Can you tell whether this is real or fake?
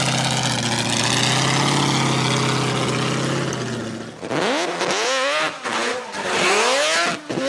real